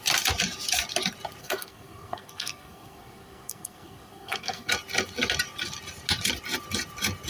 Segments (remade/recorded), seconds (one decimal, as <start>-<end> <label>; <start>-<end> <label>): 0.0-1.4 recorded; 1.4-4.7 remade; 4.7-7.3 recorded